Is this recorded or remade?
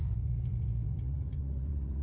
remade